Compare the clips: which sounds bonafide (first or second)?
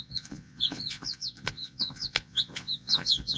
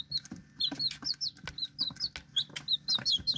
second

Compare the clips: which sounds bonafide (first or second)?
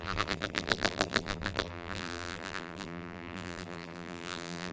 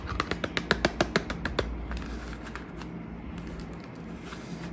second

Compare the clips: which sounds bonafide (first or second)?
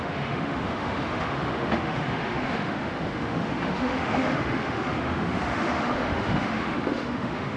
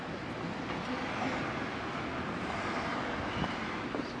second